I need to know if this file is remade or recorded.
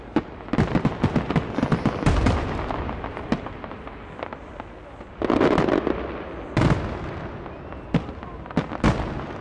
recorded